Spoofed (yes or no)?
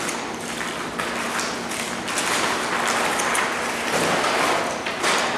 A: no